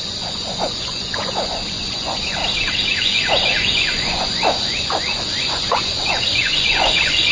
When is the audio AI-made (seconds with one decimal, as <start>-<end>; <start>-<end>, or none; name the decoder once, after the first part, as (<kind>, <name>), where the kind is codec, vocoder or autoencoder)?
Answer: 0.0-2.4 (vocoder, Vocos); 3.0-7.3